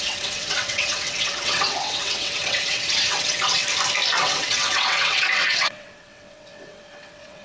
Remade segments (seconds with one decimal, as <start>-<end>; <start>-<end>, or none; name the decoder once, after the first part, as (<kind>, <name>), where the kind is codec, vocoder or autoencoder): 0.0-3.6 (vocoder, WaveNeXt); 4.2-7.4